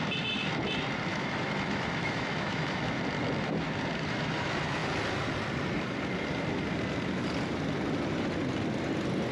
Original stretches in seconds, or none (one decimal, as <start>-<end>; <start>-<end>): 0.0-1.1; 3.0-9.3